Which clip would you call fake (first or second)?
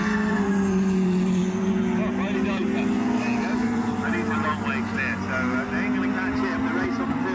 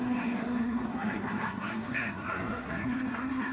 second